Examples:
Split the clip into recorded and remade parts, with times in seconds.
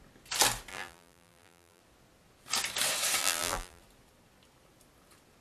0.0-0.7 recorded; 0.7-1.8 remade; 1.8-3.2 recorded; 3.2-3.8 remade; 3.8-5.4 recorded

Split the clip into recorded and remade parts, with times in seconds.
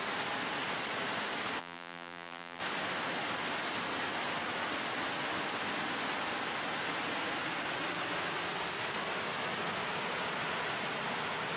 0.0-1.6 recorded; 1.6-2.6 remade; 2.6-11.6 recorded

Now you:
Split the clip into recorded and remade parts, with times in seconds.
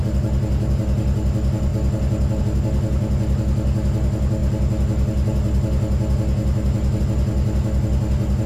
0.0-8.5 recorded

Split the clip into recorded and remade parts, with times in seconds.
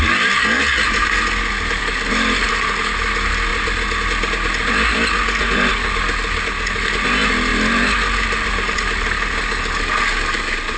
0.0-10.8 recorded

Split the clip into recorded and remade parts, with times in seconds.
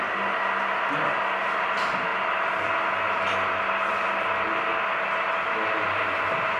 0.0-2.1 recorded; 2.1-2.7 remade; 2.7-6.6 recorded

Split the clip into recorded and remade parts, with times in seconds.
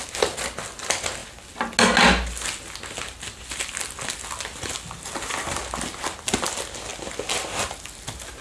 0.0-8.4 recorded